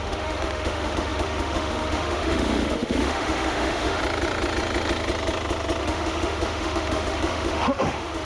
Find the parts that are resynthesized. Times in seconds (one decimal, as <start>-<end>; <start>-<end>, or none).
0.0-4.0; 5.8-8.2